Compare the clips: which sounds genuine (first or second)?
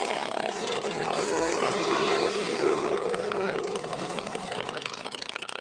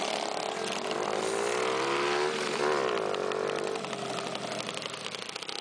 second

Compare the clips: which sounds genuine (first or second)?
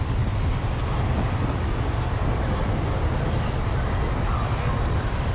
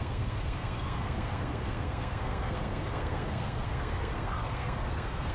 first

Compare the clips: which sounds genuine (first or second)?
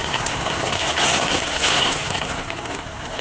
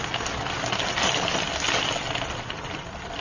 second